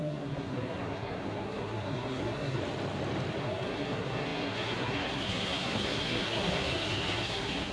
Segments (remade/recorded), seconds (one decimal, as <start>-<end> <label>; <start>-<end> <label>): 0.0-2.6 remade; 2.6-3.4 recorded; 3.4-7.7 remade

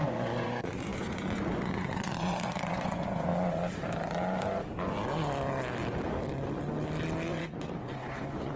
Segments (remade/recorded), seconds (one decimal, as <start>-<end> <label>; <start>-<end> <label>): 0.0-3.3 remade; 3.3-7.3 recorded; 7.3-8.6 remade

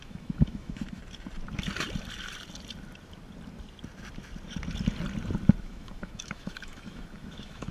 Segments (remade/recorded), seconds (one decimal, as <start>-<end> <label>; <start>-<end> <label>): 0.0-1.0 remade; 1.0-5.6 recorded; 5.6-7.7 remade

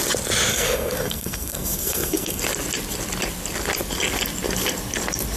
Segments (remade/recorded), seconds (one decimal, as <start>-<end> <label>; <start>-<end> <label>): 0.0-0.5 recorded; 0.5-2.4 remade; 2.4-5.4 recorded